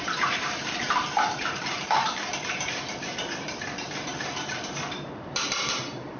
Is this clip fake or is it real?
fake